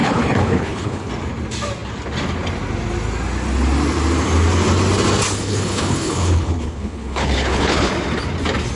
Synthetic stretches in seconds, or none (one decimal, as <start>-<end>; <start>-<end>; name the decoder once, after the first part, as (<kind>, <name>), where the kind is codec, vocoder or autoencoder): 0.0-1.1 (codec, HILCodec); 5.4-7.9